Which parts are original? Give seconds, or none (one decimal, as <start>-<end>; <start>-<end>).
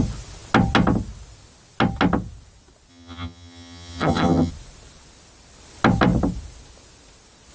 0.0-2.9; 4.5-7.5